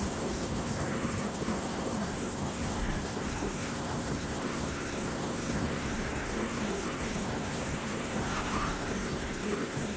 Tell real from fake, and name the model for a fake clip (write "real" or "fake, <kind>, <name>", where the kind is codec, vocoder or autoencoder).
fake, codec, SNAC